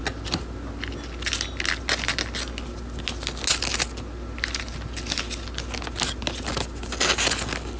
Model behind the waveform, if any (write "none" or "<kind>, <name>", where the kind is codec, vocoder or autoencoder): none